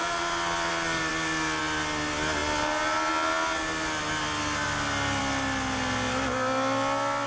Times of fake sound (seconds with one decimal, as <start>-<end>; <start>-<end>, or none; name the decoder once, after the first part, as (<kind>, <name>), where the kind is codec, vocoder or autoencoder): none